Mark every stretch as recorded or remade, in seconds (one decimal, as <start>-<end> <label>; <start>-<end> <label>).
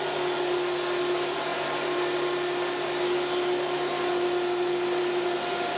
0.0-5.8 recorded